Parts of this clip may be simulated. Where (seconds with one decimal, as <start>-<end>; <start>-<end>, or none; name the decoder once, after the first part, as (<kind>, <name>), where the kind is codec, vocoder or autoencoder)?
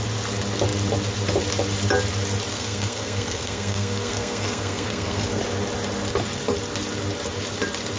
2.5-5.4 (codec, SNAC)